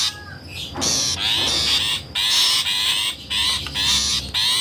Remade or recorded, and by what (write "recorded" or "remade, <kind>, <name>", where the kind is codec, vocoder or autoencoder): recorded